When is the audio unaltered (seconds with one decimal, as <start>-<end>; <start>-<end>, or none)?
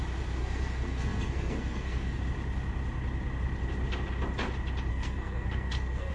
0.0-0.4; 2.2-4.9